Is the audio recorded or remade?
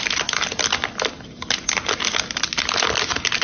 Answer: recorded